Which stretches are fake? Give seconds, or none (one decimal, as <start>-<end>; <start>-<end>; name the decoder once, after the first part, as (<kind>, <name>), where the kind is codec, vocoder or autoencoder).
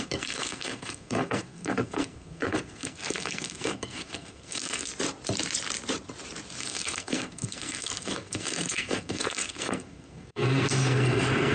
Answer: 0.0-4.9 (codec, SNAC); 6.6-11.5